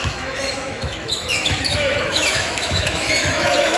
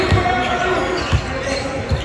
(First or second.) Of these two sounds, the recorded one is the second